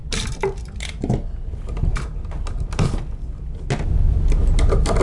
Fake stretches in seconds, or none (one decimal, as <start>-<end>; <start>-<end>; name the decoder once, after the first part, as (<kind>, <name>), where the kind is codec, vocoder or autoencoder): none